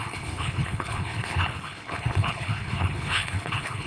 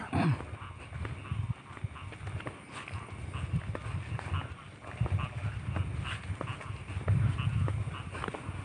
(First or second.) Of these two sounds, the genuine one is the second